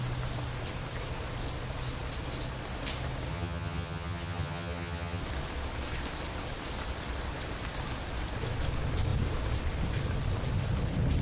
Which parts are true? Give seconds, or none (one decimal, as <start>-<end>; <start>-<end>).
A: 0.0-3.3; 5.2-11.2